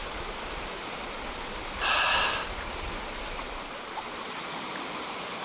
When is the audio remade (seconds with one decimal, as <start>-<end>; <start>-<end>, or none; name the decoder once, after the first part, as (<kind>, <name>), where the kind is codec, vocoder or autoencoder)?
none